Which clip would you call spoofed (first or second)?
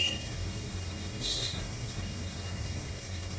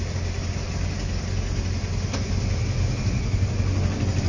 first